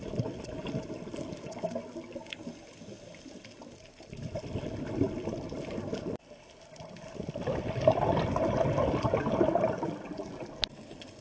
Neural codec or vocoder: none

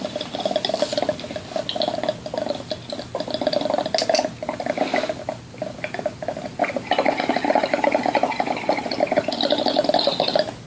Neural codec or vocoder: none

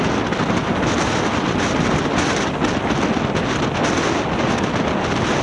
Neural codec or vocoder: none